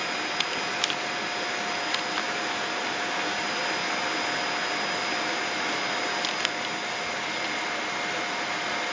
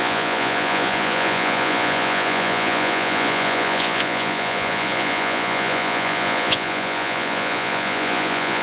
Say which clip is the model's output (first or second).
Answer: second